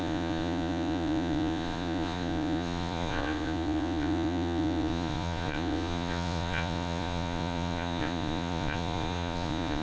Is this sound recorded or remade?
remade